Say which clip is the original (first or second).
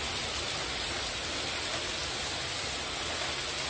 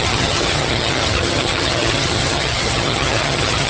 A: first